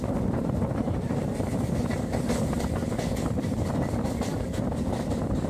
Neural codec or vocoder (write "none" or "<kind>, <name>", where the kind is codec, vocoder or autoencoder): none